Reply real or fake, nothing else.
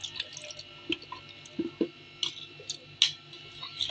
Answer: real